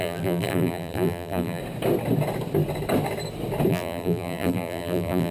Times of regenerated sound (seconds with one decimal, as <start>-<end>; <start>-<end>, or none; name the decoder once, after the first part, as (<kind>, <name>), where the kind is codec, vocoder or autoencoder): 0.0-1.6 (vocoder, BigVGAN v2); 3.7-5.3